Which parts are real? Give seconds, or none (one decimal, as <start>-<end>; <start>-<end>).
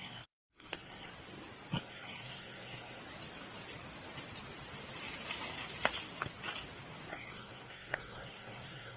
1.1-1.8; 3.0-7.1